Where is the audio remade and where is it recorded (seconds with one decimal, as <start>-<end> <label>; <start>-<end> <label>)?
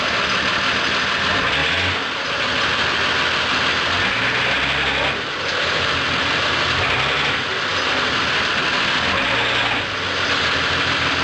0.0-11.2 recorded